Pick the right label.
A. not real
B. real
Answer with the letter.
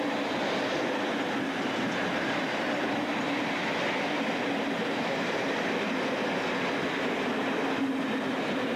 B